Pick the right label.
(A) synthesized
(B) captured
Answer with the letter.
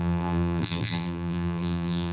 A